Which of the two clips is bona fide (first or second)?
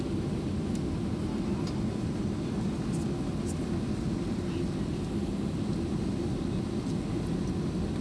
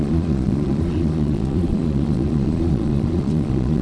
first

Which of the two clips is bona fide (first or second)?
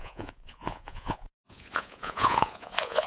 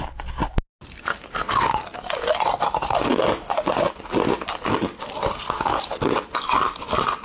second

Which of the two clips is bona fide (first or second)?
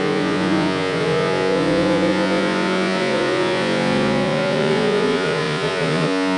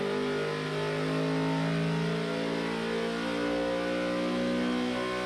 second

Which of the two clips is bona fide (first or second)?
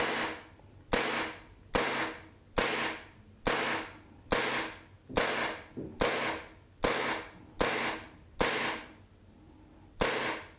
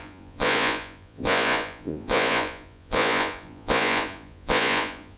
first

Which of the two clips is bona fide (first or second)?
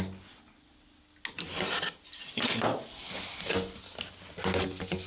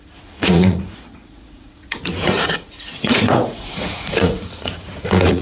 first